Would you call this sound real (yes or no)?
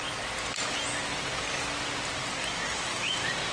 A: yes